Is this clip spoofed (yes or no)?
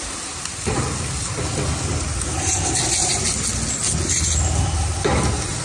no